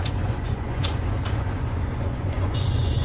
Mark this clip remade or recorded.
remade